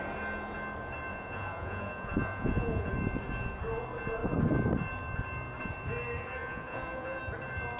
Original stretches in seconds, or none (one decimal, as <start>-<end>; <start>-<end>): 0.0-1.1; 2.9-6.4; 7.2-7.8